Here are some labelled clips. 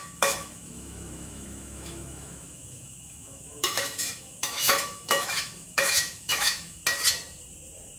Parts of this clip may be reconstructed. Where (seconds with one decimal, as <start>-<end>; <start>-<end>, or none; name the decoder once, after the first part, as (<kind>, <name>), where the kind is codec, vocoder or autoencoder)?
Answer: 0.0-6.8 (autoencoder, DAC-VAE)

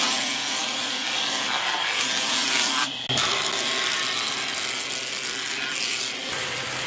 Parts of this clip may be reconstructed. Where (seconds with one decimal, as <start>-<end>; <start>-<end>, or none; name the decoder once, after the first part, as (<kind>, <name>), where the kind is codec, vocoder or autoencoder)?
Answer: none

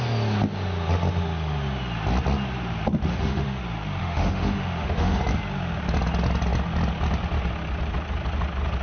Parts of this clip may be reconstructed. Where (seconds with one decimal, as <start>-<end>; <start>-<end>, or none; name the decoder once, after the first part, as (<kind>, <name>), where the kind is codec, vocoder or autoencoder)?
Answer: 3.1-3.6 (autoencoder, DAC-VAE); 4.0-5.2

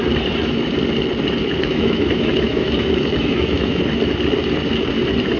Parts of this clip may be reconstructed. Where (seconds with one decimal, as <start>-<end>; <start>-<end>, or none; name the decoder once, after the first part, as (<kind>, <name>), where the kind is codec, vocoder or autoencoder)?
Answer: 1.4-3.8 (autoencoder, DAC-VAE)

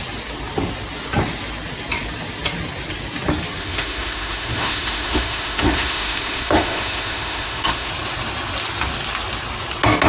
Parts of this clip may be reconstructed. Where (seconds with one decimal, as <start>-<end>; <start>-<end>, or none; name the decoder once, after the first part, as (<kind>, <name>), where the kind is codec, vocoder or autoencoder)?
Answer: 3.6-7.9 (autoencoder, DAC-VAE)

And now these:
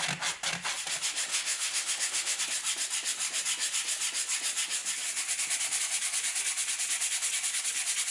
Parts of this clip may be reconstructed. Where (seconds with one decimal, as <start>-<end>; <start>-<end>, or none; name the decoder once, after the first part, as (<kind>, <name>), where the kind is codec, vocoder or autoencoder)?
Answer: 1.3-2.4 (autoencoder, DAC-VAE)

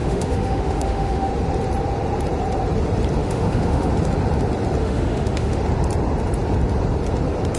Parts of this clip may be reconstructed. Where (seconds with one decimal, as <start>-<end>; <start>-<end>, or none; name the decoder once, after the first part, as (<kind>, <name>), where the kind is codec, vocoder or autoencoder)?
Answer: 0.0-1.3 (autoencoder, DAC-VAE); 3.2-3.9; 4.8-5.6